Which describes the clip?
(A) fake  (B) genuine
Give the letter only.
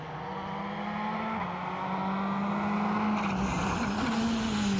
B